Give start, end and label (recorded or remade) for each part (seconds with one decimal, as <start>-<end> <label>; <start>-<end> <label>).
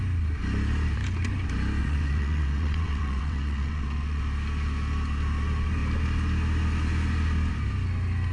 0.0-1.8 recorded; 1.8-4.2 remade; 4.2-8.3 recorded